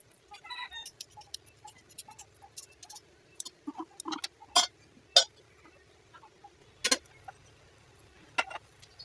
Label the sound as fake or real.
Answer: real